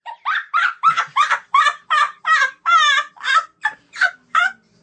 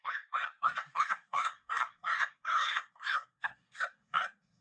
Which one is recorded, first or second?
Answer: first